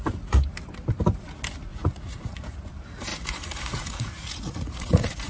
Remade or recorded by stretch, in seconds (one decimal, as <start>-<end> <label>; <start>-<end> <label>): 0.0-1.7 recorded; 1.7-2.4 remade; 2.4-3.1 recorded; 3.1-5.3 remade